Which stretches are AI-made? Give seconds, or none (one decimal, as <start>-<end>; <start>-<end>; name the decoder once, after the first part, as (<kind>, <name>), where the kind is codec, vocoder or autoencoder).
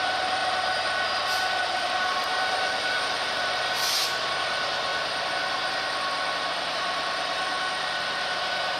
0.0-0.4 (vocoder, BigVGAN v2); 1.6-4.9; 6.7-8.8